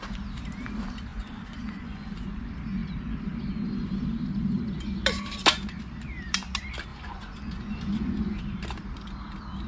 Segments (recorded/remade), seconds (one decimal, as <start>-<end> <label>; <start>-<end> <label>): 0.0-1.1 recorded; 1.1-2.4 remade; 2.4-6.9 recorded; 6.9-8.4 remade; 8.4-9.7 recorded